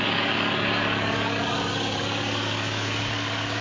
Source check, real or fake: fake